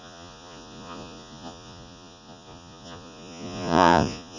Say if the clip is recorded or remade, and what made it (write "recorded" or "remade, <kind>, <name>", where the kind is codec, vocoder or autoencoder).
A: remade, vocoder, Vocos